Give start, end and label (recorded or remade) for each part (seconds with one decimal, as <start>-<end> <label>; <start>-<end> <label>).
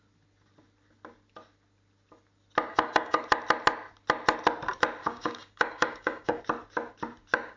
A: 0.0-2.7 recorded; 2.7-3.2 remade; 3.2-5.0 recorded; 5.0-6.4 remade; 6.4-7.6 recorded